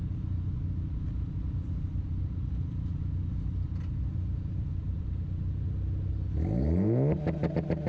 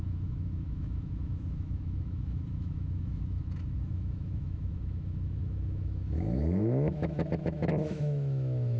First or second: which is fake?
second